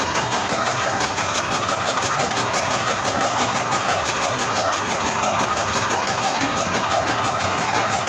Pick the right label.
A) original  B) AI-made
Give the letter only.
B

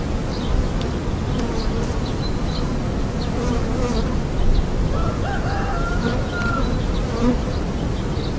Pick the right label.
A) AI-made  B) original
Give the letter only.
B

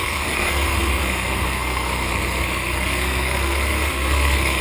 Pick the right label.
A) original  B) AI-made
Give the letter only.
B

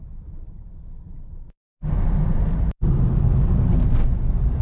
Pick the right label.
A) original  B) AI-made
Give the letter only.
A